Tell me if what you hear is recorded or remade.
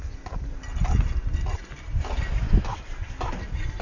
recorded